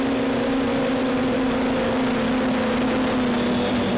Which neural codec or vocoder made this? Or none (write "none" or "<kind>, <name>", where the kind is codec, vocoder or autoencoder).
none